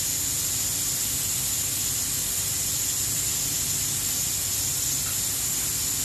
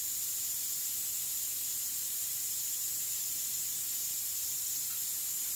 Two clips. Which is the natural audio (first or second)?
first